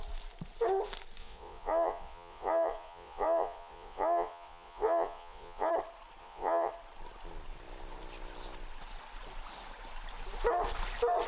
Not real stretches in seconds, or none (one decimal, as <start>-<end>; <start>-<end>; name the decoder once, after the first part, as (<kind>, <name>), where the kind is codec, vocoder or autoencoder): 1.2-5.7 (vocoder, Vocos); 6.2-6.7